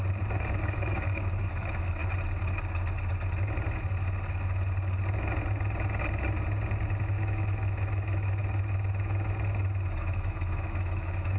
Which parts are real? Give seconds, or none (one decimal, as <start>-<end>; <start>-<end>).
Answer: 0.0-0.6; 2.0-7.0; 8.4-10.0